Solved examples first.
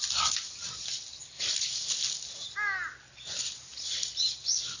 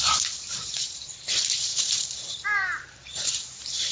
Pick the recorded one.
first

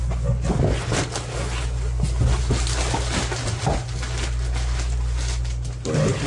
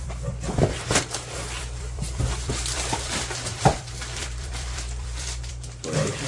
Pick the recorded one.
first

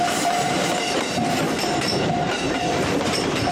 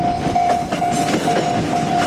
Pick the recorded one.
second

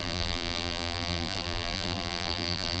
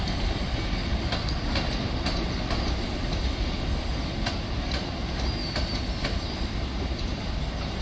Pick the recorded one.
second